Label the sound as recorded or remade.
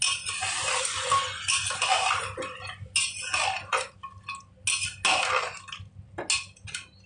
recorded